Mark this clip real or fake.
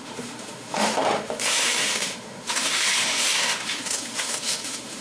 fake